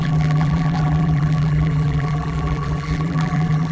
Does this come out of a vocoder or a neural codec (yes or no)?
yes